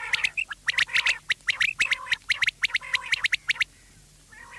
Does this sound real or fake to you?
real